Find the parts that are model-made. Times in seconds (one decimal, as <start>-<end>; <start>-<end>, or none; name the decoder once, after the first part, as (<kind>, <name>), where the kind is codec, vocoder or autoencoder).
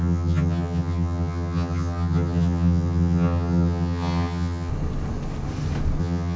0.0-4.7 (vocoder, HiFi-GAN); 6.0-6.4